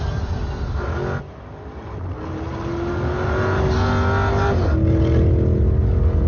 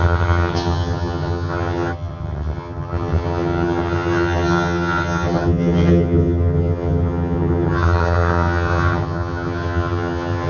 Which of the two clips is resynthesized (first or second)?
second